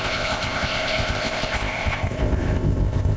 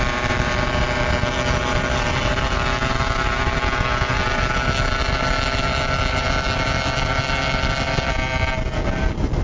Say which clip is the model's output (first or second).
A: first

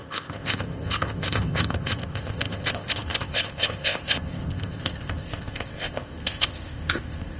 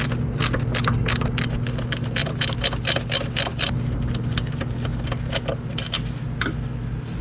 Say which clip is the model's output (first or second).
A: first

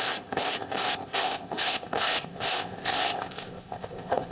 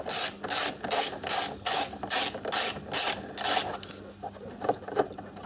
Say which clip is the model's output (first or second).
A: first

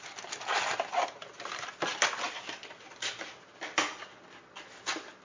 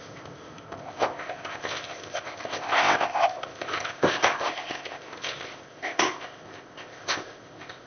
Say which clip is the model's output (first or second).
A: second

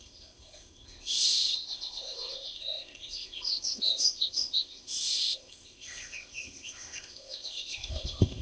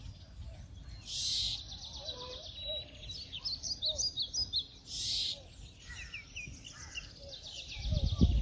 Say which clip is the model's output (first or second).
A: first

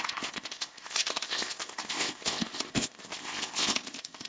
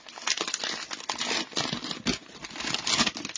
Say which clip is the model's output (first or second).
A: first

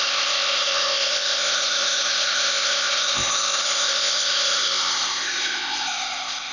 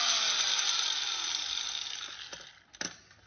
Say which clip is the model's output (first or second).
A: first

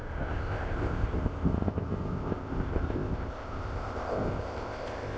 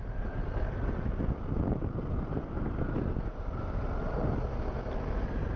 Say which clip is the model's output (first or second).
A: first